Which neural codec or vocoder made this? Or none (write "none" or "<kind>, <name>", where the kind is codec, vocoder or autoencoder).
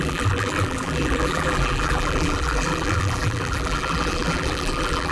vocoder, BigVGAN v2